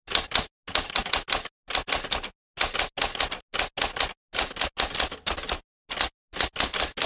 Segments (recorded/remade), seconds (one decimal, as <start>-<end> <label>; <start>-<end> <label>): 0.0-7.1 recorded